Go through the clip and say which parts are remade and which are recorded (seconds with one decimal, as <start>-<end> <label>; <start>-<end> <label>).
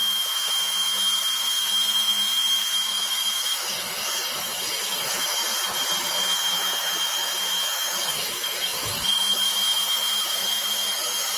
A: 0.0-5.4 remade; 5.4-6.0 recorded; 6.0-11.4 remade